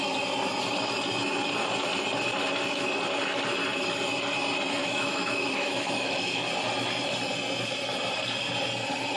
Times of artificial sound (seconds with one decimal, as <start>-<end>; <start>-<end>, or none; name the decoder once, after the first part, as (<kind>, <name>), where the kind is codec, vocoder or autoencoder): 4.8-6.5 (autoencoder, DAC-VAE)